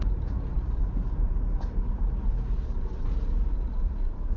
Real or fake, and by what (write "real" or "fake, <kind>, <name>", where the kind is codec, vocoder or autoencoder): fake, vocoder, BigVGAN v2